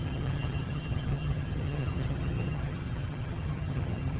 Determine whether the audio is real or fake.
fake